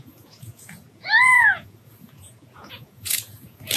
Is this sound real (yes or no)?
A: no